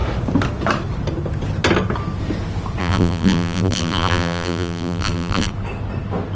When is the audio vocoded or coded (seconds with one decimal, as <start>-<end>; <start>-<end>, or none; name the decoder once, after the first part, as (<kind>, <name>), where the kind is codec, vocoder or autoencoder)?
2.8-5.5 (vocoder, BigVGAN v2)